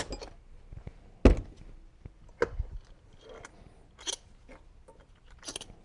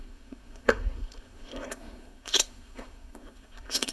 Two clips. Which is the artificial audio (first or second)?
second